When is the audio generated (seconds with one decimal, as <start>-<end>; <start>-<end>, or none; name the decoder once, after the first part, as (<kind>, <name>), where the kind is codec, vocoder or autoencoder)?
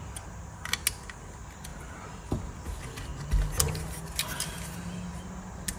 none